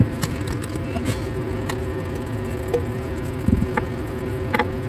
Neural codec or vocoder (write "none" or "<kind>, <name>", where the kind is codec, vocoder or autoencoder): none